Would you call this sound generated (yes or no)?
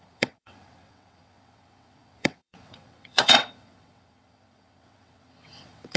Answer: yes